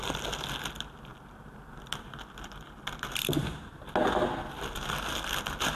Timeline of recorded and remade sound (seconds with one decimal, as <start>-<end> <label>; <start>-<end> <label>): 0.0-5.8 recorded